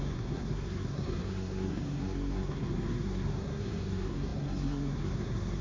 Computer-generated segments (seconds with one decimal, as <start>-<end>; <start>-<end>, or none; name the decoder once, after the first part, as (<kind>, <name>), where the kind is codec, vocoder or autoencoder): 0.0-5.6 (codec, SNAC)